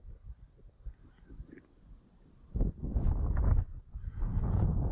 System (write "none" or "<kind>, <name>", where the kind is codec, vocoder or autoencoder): none